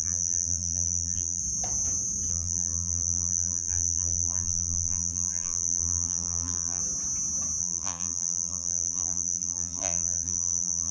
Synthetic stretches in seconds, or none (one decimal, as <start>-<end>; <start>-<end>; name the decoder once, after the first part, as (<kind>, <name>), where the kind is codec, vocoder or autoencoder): 0.0-1.4 (vocoder, BigVGAN v2); 2.3-6.8; 7.6-10.9